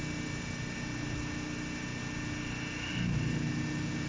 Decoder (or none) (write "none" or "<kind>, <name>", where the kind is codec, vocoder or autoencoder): none